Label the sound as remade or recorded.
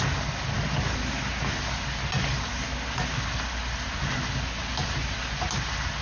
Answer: recorded